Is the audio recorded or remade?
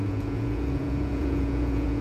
remade